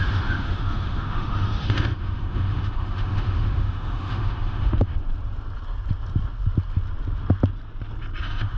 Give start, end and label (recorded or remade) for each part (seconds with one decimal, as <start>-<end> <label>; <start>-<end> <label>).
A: 0.0-4.9 remade; 4.9-8.2 recorded; 8.2-8.6 remade